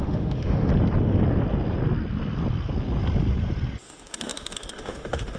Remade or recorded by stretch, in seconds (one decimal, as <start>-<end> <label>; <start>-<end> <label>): 0.0-0.7 remade; 0.7-3.8 recorded; 3.8-5.4 remade